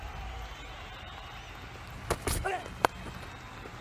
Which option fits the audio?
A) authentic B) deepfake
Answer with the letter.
A